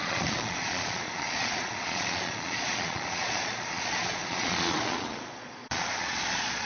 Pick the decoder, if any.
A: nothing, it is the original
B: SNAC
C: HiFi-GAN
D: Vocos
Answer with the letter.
D